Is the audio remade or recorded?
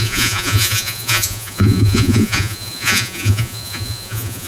remade